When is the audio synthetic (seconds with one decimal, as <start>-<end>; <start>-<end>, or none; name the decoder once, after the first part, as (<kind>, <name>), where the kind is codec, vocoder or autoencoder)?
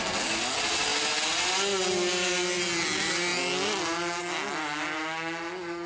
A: none